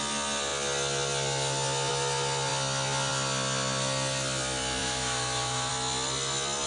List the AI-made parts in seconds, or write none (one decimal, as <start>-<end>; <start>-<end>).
4.8-5.7